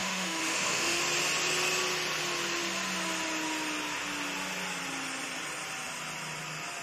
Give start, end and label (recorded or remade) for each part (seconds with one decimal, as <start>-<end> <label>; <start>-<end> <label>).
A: 0.0-1.0 remade; 1.0-6.8 recorded